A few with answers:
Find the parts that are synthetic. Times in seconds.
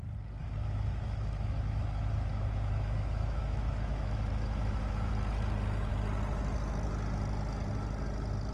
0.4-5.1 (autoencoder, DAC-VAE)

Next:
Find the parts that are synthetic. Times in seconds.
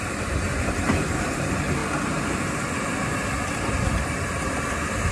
0.0-1.8 (vocoder, BigVGAN v2); 4.6-5.1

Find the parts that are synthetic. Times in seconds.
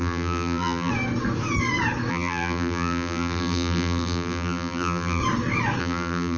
0.0-0.9 (vocoder, BigVGAN v2); 2.1-5.2; 5.8-6.4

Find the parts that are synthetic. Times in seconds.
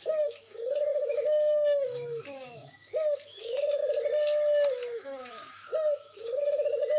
0.0-3.8 (autoencoder, DAC-VAE); 4.7-7.0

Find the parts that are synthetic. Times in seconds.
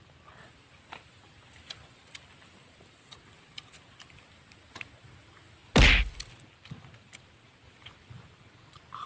none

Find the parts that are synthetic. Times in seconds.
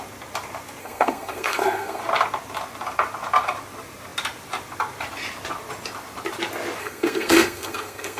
0.8-2.0 (codec, SNAC); 6.8-8.2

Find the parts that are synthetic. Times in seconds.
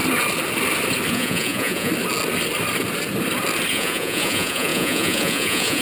1.1-1.9 (vocoder, Vocos); 3.7-5.8